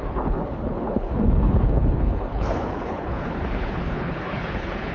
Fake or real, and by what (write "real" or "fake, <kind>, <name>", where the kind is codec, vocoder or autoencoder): fake, codec, HILCodec